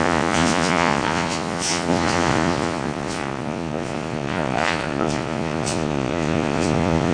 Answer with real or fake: fake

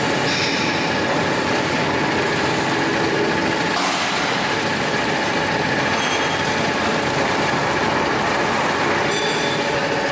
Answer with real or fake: real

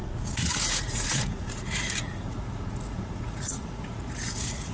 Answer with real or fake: fake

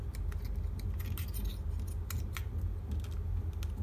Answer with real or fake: real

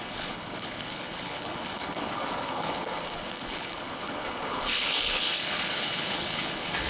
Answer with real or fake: fake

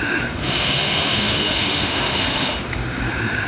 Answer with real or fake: fake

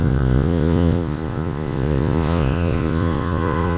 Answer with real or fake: fake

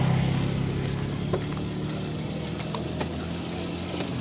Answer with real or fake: real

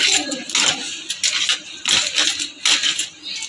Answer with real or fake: real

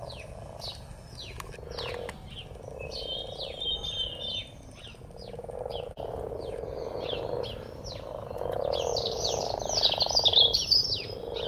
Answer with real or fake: real